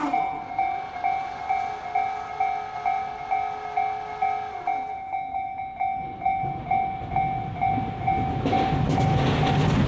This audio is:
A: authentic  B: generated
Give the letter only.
A